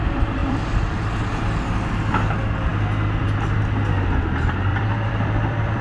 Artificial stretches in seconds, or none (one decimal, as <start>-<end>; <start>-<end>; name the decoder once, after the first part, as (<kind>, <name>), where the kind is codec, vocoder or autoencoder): 0.4-1.1 (vocoder, BigVGAN v2); 4.7-5.8